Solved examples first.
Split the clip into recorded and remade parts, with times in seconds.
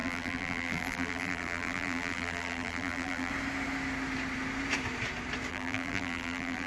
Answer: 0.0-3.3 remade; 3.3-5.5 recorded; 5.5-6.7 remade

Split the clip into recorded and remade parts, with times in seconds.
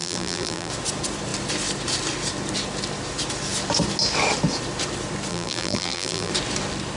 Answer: 0.0-0.7 remade; 0.7-5.3 recorded; 5.3-6.3 remade; 6.3-7.0 recorded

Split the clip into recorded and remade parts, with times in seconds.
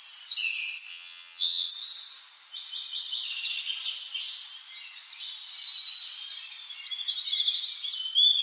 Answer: 0.0-0.9 recorded; 0.9-1.7 remade; 1.7-8.4 recorded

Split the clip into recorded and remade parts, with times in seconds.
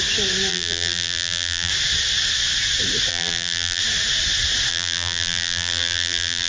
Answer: 0.0-0.5 recorded; 0.5-1.7 remade; 1.7-3.1 recorded; 3.1-3.8 remade; 3.8-4.7 recorded; 4.7-6.5 remade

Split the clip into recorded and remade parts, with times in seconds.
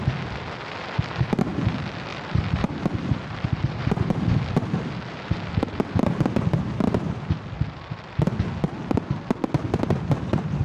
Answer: 0.0-2.1 recorded; 2.1-4.4 remade; 4.4-10.6 recorded